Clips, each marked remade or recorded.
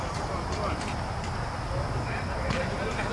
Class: recorded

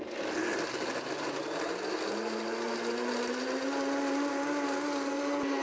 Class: recorded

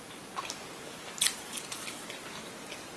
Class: recorded